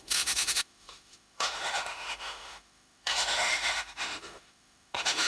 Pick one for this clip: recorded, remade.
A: remade